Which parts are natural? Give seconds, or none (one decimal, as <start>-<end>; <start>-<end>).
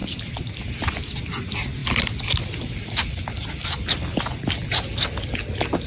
0.0-5.9